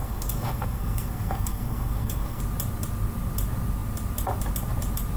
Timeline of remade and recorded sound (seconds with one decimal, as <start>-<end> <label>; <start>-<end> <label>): 0.0-2.4 remade; 2.4-5.2 recorded